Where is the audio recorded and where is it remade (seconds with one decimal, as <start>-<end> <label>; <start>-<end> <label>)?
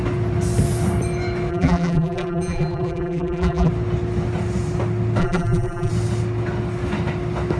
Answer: 0.0-1.5 recorded; 1.5-3.7 remade; 3.7-5.2 recorded; 5.2-5.9 remade; 5.9-7.6 recorded